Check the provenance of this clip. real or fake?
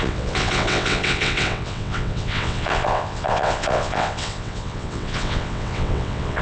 fake